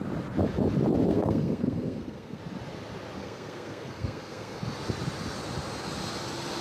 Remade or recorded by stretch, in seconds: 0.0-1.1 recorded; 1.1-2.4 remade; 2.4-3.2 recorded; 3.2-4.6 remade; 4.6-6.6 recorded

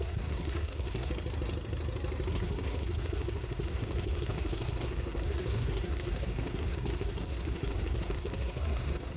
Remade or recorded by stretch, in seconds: 0.0-1.1 remade; 1.1-2.3 recorded; 2.3-9.2 remade

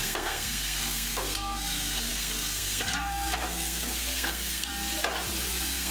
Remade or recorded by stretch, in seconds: 0.0-4.7 remade; 4.7-5.5 recorded; 5.5-5.9 remade

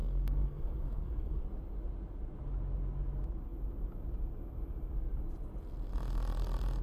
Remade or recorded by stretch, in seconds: 0.0-1.4 remade; 1.4-6.8 recorded

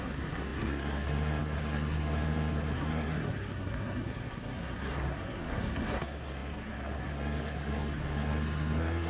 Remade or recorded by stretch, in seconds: 0.0-9.1 remade